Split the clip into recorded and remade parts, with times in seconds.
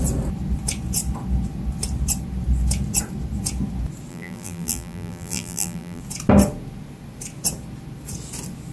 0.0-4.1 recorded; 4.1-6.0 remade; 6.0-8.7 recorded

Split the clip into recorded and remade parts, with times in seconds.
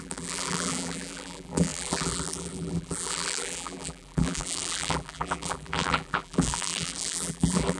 0.0-7.8 remade